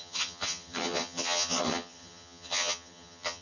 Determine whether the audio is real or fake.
fake